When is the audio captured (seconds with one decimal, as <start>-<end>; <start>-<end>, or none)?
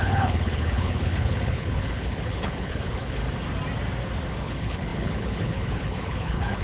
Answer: 3.2-4.4